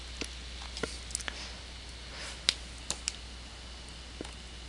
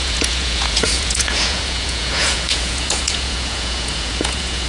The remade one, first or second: second